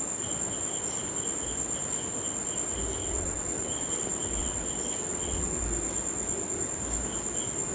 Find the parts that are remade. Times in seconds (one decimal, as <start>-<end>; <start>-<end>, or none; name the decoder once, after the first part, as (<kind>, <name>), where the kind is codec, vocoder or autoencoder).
3.0-4.0 (vocoder, WaveNeXt); 4.4-5.6